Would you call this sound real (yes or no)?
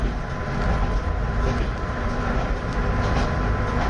yes